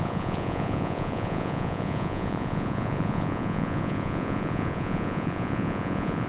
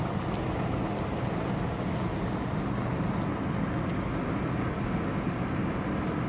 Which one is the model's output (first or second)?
first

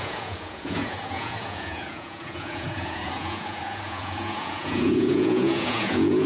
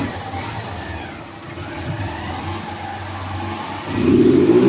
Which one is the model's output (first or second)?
first